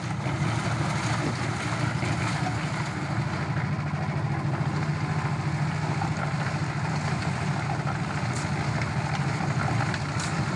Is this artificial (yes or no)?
no